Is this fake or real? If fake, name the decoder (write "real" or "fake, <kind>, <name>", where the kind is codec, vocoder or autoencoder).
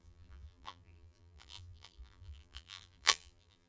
fake, vocoder, BigVGAN v2